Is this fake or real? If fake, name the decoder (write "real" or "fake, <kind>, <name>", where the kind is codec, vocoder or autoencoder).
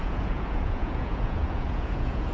fake, vocoder, Vocos